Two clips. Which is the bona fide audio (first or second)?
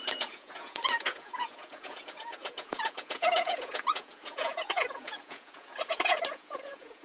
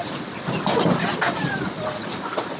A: second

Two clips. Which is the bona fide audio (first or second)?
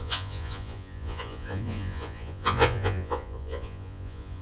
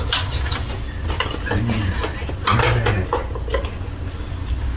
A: second